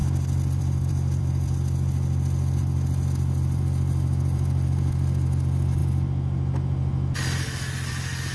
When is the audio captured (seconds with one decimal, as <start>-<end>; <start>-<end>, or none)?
0.0-8.3